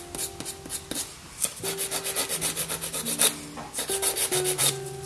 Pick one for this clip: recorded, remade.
recorded